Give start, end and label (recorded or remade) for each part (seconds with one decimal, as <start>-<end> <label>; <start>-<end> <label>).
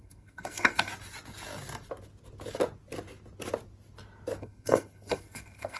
0.0-0.9 remade; 0.9-4.4 recorded; 4.4-5.8 remade